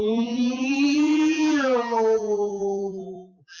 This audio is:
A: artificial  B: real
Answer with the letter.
A